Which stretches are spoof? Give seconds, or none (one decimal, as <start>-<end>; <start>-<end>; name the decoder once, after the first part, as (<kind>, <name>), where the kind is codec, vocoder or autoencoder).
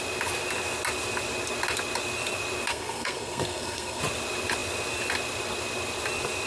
2.7-4.0 (codec, SNAC)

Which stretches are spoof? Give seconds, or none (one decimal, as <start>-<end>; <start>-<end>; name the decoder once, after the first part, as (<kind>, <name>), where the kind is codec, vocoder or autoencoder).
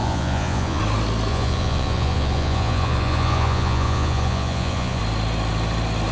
0.0-0.8 (vocoder, Vocos); 1.3-5.0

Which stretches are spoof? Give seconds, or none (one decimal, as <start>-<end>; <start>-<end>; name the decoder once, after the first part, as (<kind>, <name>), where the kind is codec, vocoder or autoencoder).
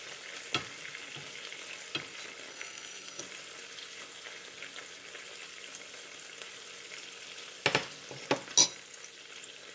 2.5-3.2 (codec, SNAC)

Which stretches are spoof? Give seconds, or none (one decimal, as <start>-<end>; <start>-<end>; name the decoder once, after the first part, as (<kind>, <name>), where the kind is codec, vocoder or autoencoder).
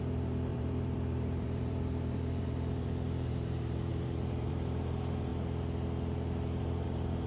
0.0-5.3 (vocoder, BigVGAN v2); 6.6-7.3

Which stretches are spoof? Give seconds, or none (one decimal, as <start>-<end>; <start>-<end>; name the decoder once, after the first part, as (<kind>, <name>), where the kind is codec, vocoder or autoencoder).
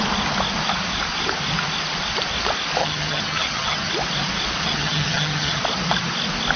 2.8-3.9 (vocoder, HiFi-GAN); 4.6-5.6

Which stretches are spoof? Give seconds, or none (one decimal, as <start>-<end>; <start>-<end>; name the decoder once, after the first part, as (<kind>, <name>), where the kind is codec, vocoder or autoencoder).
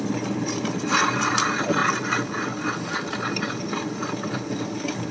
none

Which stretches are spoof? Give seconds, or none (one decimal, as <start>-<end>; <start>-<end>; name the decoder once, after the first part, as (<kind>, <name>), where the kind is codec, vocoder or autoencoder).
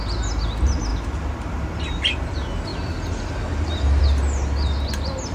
none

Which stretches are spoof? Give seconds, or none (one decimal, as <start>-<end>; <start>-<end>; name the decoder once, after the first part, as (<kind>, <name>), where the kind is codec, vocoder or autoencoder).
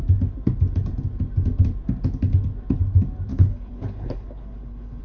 3.3-5.0 (codec, HILCodec)